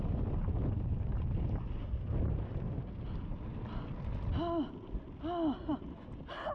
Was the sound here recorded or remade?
recorded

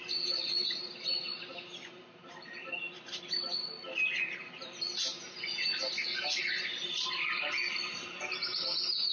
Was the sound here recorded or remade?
recorded